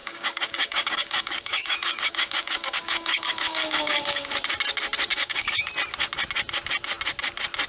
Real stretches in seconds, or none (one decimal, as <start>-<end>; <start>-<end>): 4.3-5.1; 5.7-7.7